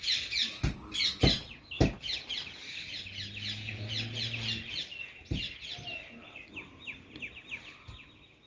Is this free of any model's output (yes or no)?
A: yes